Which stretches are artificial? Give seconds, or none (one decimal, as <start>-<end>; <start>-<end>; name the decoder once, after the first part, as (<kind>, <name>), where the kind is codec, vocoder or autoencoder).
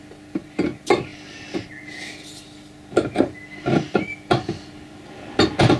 none